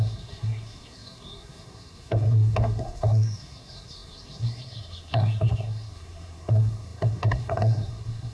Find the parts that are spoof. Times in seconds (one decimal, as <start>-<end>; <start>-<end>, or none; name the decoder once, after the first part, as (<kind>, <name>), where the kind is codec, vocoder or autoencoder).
0.0-8.3 (codec, SNAC)